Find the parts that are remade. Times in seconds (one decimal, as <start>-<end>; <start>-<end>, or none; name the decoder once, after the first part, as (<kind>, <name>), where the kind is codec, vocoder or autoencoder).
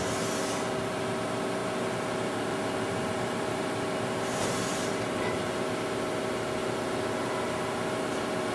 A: 1.6-5.8 (vocoder, BigVGAN v2); 6.6-8.5